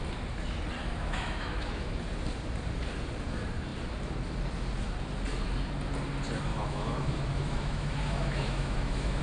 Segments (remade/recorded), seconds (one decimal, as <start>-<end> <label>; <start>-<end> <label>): 0.0-0.8 recorded; 0.8-2.0 remade; 2.0-6.5 recorded; 6.5-9.2 remade